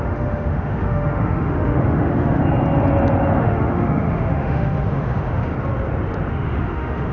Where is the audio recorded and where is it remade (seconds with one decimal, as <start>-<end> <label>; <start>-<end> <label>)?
0.0-2.4 remade; 2.4-3.4 recorded; 3.4-5.5 remade; 5.5-6.3 recorded; 6.3-7.1 remade